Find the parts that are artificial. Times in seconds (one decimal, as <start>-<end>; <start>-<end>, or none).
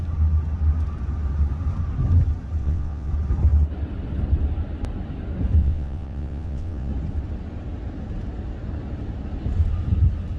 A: 2.6-3.1; 5.6-6.9